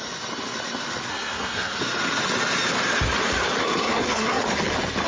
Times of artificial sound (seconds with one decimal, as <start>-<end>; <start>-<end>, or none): 1.1-1.8; 3.6-4.4